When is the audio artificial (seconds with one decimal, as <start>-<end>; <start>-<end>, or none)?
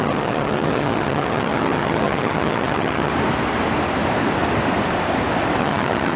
0.0-3.1; 5.6-6.2